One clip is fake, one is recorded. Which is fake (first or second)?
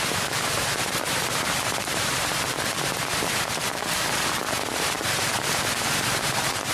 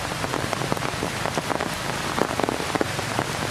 first